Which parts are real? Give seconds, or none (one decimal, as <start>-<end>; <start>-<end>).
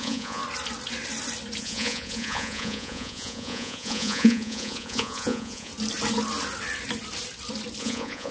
0.4-1.6; 5.7-7.8